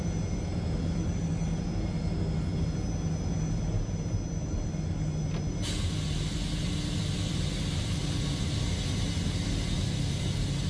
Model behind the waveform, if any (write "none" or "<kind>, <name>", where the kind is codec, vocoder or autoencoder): none